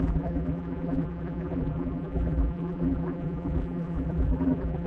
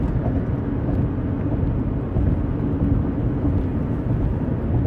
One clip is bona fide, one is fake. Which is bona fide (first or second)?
second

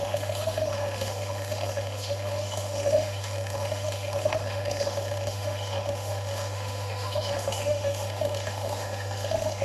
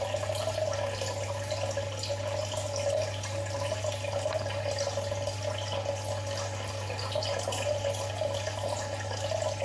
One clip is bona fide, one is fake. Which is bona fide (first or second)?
second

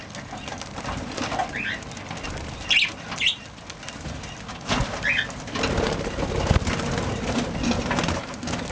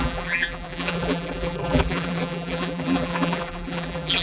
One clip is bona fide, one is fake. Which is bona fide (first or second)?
first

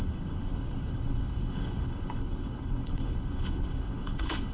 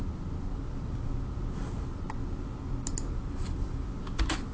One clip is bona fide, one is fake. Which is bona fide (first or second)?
second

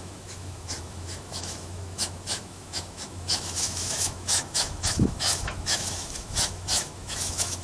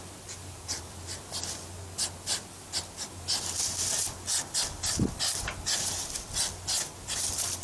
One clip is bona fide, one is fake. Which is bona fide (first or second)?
second